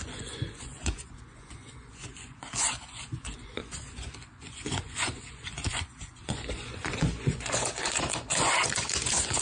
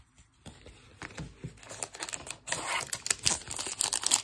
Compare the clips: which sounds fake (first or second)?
first